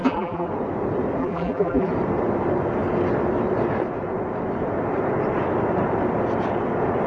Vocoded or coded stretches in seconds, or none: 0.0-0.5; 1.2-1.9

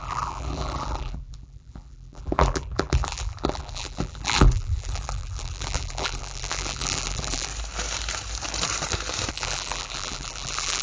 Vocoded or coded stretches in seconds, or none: 0.0-7.5; 9.3-10.8

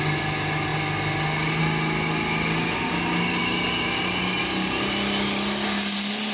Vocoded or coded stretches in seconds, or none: none

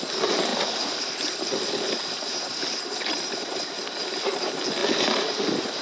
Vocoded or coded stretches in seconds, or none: 0.5-4.0

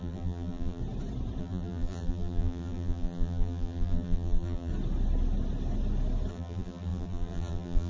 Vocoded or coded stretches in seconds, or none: 0.0-0.8; 1.4-4.7; 6.3-7.9

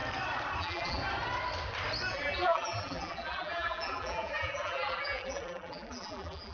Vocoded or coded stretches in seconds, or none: 0.6-1.0; 2.1-6.5